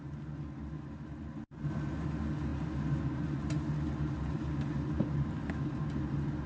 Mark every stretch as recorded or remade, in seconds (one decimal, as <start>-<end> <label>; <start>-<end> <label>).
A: 0.0-6.5 recorded